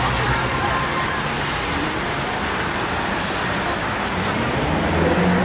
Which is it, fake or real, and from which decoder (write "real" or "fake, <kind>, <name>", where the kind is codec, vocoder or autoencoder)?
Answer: real